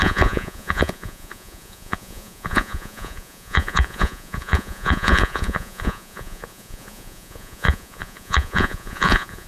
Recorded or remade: remade